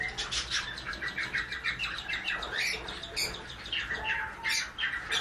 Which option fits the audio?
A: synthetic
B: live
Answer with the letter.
B